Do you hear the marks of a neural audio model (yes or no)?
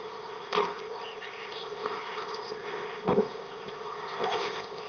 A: yes